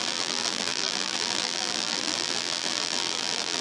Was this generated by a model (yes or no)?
yes